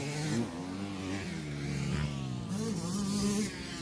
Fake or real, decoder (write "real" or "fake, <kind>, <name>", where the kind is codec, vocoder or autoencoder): real